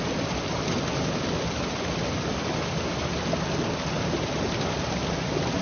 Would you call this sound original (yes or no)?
yes